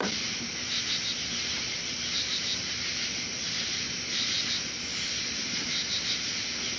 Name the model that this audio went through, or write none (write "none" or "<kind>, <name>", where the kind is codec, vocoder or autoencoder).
none